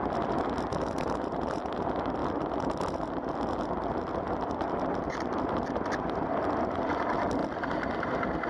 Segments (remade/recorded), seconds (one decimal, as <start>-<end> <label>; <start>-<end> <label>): 0.0-8.5 recorded